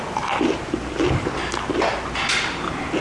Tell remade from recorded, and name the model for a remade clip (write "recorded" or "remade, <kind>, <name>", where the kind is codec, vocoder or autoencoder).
recorded